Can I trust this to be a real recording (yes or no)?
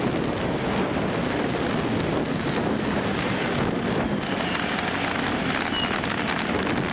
yes